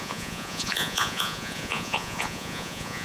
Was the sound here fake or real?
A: fake